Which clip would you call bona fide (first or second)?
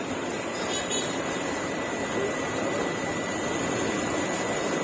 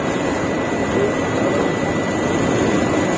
second